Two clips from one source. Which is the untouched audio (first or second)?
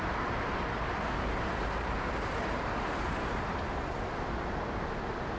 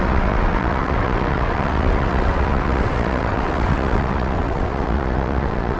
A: first